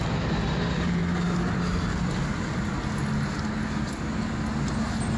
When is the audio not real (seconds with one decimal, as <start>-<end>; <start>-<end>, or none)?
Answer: none